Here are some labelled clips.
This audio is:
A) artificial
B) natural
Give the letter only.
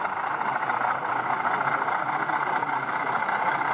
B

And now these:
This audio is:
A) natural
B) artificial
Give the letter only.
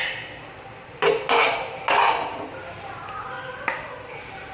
A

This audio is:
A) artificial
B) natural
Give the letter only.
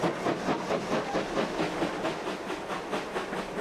B